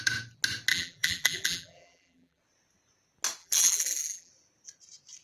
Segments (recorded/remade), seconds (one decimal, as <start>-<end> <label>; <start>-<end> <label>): 0.0-0.7 recorded; 0.7-2.4 remade; 2.4-3.4 recorded; 3.4-4.3 remade; 4.3-5.2 recorded